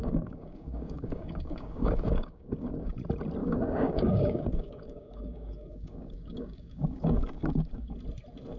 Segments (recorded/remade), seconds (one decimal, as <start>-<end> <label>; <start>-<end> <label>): 0.0-2.9 remade; 2.9-3.4 recorded; 3.4-7.9 remade; 7.9-8.6 recorded